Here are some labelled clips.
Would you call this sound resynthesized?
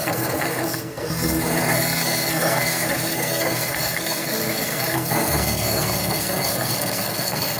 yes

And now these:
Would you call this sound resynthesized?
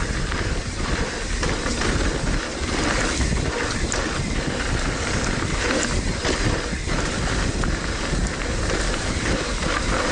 no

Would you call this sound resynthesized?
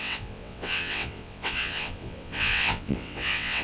yes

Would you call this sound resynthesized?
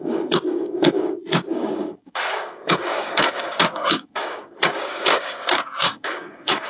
yes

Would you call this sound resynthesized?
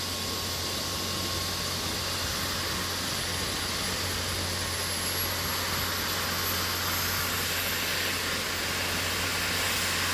no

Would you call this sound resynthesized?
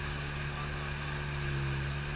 no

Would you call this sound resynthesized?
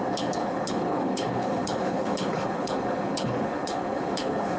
yes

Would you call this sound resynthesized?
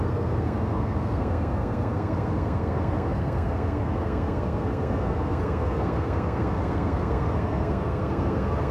yes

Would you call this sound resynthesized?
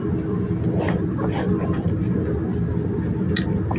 no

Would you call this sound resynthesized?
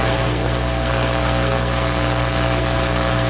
yes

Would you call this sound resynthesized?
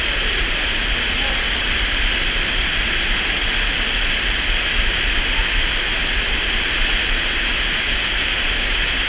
no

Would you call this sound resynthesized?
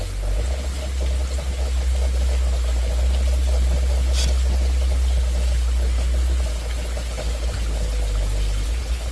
no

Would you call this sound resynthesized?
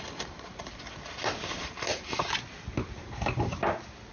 no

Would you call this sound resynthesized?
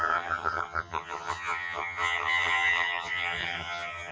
yes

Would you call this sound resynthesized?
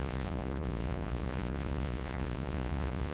yes